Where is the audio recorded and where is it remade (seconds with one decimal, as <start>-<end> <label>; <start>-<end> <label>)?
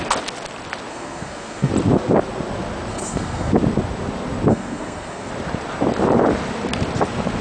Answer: 0.0-0.9 recorded; 0.9-1.7 remade; 1.7-2.9 recorded; 2.9-3.5 remade; 3.5-4.5 recorded; 4.5-5.3 remade; 5.3-7.4 recorded